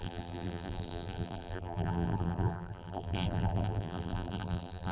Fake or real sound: fake